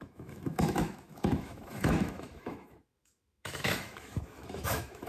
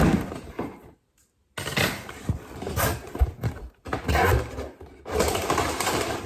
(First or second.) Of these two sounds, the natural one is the second